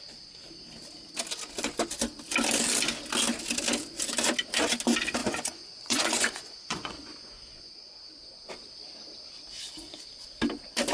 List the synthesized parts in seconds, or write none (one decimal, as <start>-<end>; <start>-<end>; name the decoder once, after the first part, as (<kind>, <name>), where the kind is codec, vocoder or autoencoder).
5.2-8.5 (vocoder, Vocos)